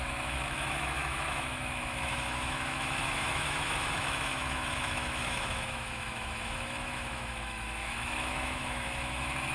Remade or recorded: remade